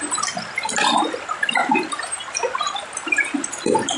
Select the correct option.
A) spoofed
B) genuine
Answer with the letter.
B